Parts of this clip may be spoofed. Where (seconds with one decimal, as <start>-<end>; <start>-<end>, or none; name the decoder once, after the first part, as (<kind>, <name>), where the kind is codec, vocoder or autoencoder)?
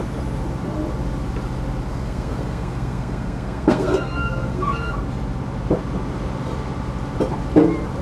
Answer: 1.9-4.9 (codec, SNAC)